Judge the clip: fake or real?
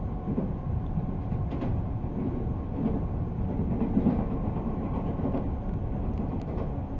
real